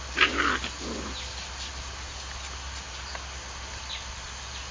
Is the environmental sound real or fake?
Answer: real